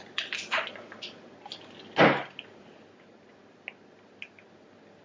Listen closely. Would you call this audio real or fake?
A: real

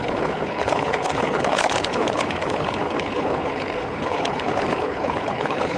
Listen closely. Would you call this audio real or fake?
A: fake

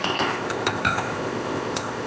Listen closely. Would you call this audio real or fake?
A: fake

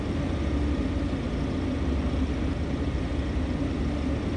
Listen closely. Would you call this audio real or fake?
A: real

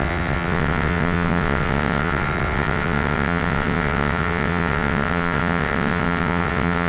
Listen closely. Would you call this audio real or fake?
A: fake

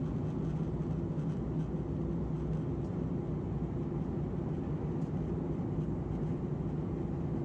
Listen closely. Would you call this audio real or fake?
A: real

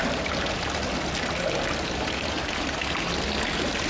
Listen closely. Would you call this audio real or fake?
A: real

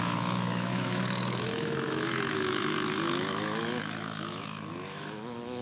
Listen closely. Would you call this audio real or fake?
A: fake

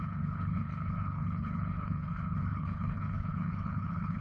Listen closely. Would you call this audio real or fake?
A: fake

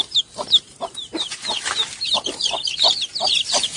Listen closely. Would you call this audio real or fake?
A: fake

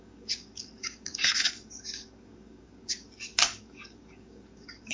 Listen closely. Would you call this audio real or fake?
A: fake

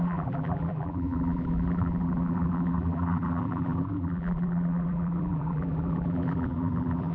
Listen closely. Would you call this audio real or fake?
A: fake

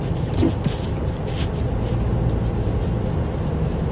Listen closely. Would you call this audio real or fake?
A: real